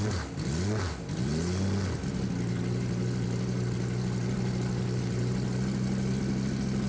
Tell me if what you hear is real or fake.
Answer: real